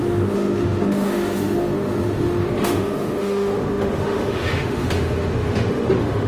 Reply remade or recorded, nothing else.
remade